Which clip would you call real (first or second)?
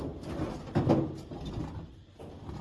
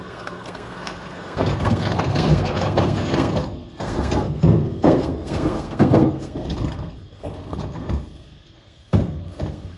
first